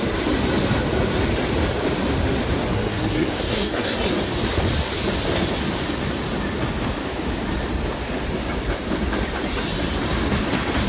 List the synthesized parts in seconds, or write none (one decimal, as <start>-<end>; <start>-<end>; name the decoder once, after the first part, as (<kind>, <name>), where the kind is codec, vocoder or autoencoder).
2.7-4.1 (codec, SNAC)